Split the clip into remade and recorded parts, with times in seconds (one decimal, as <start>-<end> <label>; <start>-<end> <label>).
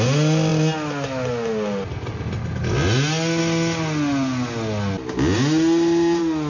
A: 0.0-6.5 recorded